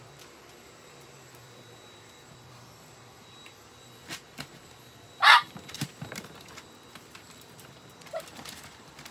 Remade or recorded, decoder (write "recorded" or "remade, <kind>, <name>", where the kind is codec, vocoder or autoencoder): remade, vocoder, BigVGAN v2